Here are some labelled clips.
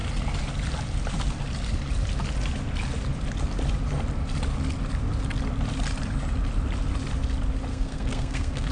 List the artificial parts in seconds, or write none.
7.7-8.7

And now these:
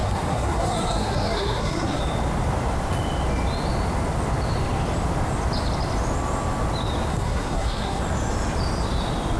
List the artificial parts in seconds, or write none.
0.0-2.0; 7.1-8.0